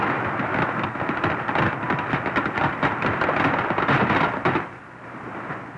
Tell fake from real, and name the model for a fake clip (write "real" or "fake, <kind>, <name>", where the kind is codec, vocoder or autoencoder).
fake, vocoder, BigVGAN v2